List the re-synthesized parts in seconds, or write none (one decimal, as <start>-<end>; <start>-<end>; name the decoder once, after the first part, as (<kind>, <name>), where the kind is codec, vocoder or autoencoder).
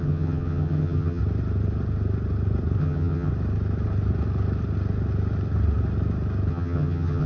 0.0-1.2 (vocoder, HiFi-GAN); 2.8-3.3; 6.5-7.3